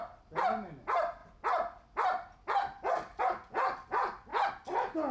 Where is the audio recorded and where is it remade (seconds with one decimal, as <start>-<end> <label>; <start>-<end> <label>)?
0.0-5.1 recorded